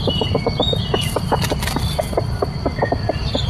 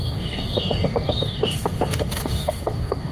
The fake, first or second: second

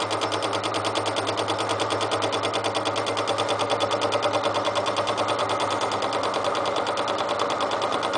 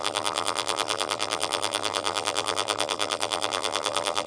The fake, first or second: second